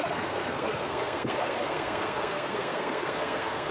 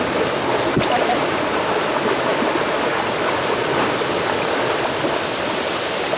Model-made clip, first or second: first